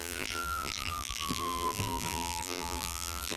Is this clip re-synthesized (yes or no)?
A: yes